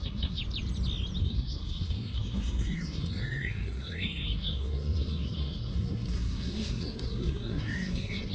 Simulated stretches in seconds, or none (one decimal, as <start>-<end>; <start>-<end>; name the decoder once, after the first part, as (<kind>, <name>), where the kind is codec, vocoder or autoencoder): 0.0-0.4 (codec, SNAC); 1.2-8.3